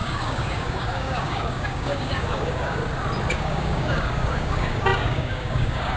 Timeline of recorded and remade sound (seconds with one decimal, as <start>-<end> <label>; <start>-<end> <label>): 0.0-2.8 remade; 2.8-3.3 recorded; 3.3-6.0 remade